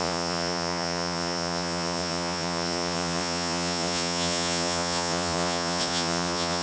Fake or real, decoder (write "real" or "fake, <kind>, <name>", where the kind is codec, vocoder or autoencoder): fake, vocoder, Vocos